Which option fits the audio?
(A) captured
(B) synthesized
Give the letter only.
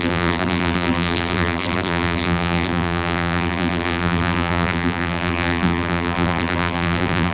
B